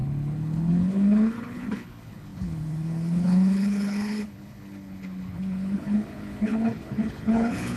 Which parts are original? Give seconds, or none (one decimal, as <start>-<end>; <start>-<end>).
none